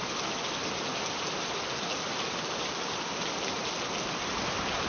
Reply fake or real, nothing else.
real